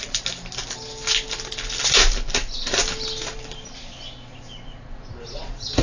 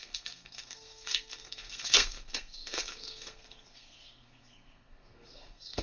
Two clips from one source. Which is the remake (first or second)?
second